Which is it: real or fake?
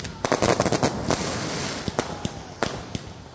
real